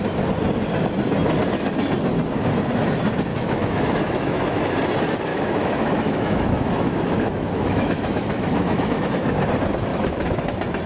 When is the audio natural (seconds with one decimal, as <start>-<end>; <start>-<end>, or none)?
0.0-3.3; 4.6-5.3; 9.1-9.9; 10.4-10.9